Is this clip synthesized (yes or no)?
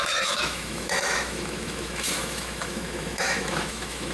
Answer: yes